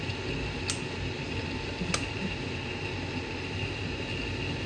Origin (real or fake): real